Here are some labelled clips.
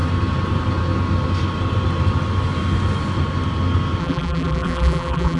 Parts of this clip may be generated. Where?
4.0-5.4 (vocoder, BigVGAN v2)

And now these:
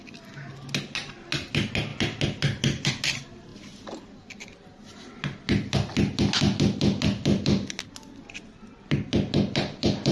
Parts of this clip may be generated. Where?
none

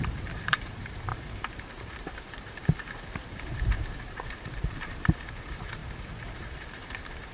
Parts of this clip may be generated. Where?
0.0-7.3 (vocoder, BigVGAN v2)

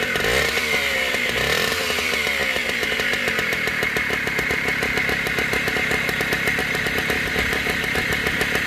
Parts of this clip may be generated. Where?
0.0-8.7 (vocoder, BigVGAN v2)

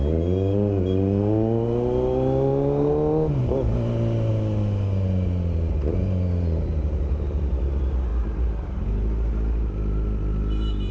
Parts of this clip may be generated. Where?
none

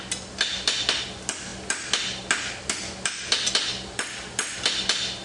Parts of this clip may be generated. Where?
none